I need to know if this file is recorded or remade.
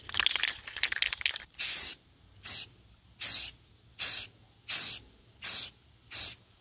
recorded